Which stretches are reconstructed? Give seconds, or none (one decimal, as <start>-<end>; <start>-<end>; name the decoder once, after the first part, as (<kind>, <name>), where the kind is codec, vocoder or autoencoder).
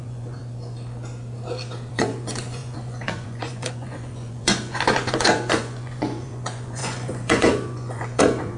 0.0-0.4 (vocoder, Vocos); 1.9-8.6